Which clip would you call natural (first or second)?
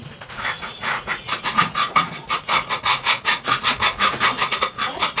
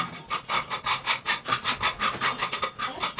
second